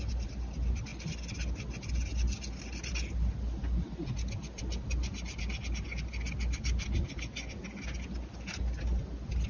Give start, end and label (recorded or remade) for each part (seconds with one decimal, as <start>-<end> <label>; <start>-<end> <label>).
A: 0.0-9.5 recorded